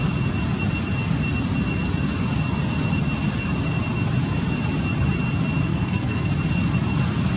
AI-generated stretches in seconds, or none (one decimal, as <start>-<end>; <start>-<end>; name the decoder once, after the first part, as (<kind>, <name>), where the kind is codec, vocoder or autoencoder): 5.7-6.3 (codec, SNAC)